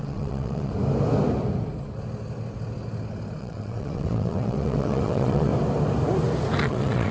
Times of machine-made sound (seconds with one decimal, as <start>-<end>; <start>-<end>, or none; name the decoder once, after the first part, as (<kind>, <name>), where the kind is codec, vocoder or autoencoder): 0.0-0.7 (vocoder, WaveNeXt); 3.4-5.5; 6.6-7.1